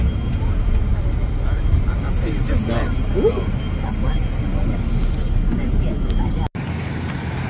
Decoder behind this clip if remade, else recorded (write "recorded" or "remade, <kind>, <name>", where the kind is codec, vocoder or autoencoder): recorded